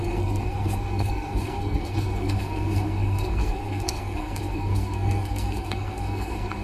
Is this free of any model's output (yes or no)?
no